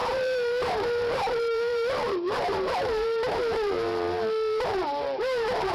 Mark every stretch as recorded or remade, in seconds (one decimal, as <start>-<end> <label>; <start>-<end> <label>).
0.0-5.7 remade